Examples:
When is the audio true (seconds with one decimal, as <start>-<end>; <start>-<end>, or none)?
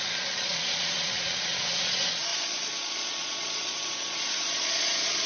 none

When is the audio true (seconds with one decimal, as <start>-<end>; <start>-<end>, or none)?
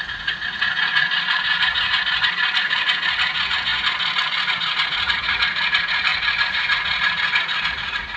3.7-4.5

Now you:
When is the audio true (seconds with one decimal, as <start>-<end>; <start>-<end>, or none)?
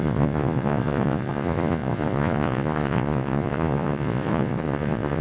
none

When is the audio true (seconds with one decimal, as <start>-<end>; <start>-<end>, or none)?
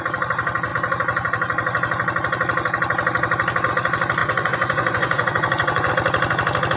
0.0-4.2; 5.9-6.8